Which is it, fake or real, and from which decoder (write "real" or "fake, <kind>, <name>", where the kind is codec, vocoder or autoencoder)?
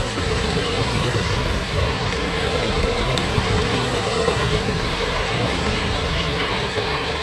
fake, codec, SNAC